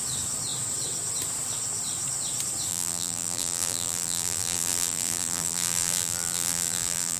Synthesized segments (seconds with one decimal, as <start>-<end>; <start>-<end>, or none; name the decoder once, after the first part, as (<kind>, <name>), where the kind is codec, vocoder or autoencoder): 2.7-7.2 (vocoder, BigVGAN v2)